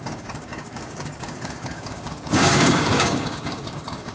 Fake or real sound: fake